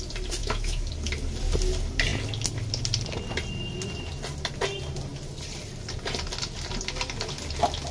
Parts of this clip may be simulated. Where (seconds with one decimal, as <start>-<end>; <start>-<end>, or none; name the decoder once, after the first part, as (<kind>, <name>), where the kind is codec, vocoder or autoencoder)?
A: 0.4-0.9 (autoencoder, DAC-VAE)